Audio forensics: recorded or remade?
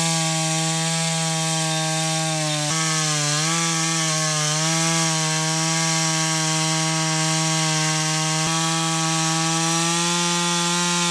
recorded